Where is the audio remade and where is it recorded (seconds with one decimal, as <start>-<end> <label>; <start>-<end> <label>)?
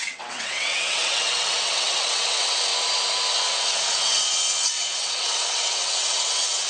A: 0.0-2.7 remade; 2.7-3.3 recorded; 3.3-6.7 remade